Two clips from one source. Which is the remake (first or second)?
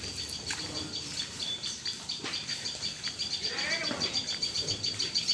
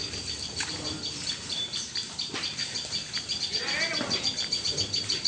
first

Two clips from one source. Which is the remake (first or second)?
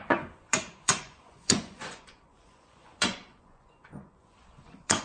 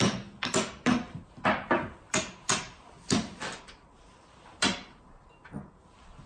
first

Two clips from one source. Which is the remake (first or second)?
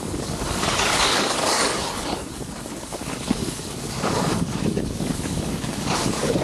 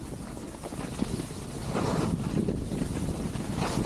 first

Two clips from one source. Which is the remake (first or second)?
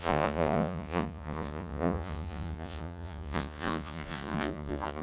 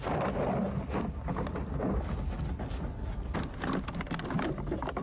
first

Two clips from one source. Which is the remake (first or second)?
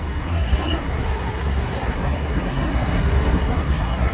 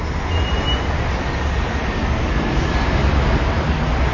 first